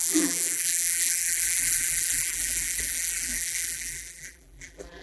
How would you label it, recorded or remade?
remade